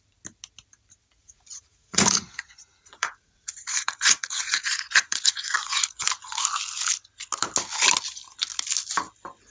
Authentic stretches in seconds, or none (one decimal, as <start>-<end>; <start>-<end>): 0.0-1.2; 6.3-9.5